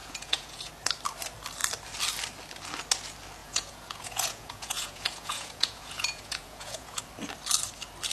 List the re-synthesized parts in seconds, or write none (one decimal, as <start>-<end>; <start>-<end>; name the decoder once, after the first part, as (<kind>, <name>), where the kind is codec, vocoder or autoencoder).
0.0-0.7 (vocoder, Vocos); 3.4-7.0